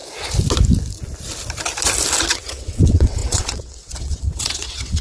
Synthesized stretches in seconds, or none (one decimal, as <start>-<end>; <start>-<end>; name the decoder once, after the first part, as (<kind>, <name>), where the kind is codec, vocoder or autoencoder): 2.3-5.0 (vocoder, WaveNeXt)